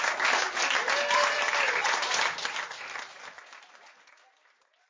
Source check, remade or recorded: recorded